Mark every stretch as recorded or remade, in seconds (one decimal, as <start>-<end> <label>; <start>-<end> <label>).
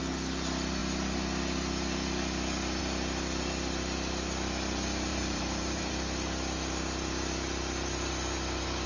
0.0-5.1 recorded; 5.1-5.9 remade; 5.9-8.9 recorded